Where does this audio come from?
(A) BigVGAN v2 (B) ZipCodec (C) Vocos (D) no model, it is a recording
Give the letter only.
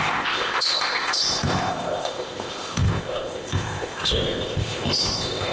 B